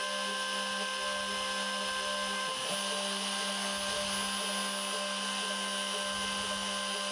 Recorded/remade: recorded